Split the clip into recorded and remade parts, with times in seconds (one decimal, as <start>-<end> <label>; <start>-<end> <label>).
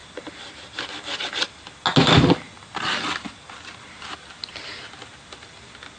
0.0-6.0 recorded